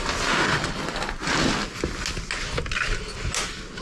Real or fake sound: real